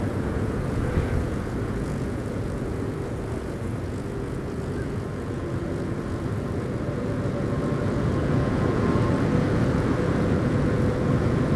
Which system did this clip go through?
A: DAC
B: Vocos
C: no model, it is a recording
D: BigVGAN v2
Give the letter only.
B